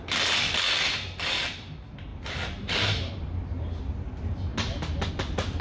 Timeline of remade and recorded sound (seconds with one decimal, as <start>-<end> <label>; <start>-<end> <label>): 0.0-5.6 recorded